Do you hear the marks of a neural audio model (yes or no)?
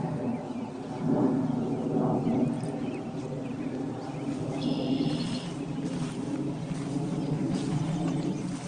no